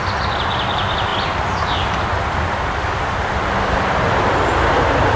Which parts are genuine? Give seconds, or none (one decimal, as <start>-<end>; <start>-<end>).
0.0-5.2